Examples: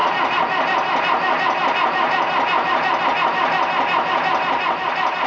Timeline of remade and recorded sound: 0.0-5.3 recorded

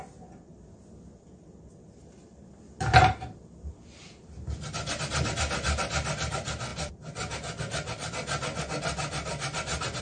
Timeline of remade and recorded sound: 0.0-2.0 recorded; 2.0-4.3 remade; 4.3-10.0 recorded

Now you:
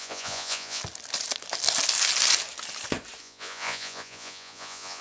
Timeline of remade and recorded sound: 0.0-0.8 remade; 0.8-3.2 recorded; 3.2-5.0 remade

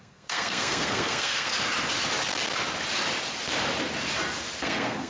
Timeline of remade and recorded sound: 0.0-1.5 remade; 1.5-4.6 recorded; 4.6-5.1 remade

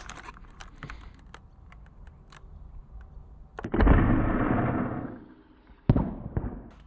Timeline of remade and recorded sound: 0.0-6.9 recorded

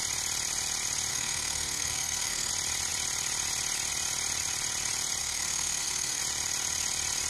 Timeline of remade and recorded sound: 0.0-1.1 recorded; 1.1-2.5 remade; 2.5-5.2 recorded; 5.2-6.2 remade; 6.2-7.3 recorded

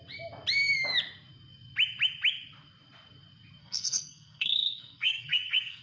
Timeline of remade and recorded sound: 0.0-3.6 recorded; 3.6-5.8 remade

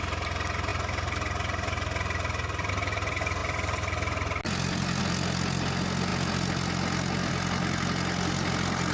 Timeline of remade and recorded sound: 0.0-8.9 recorded